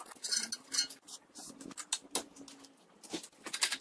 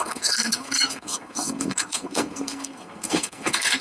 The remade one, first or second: second